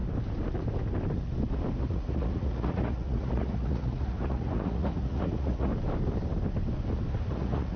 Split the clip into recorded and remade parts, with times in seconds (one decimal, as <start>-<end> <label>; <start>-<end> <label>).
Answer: 0.0-1.8 recorded; 1.8-5.7 remade; 5.7-7.3 recorded; 7.3-7.8 remade